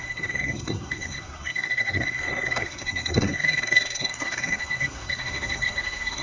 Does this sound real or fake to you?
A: fake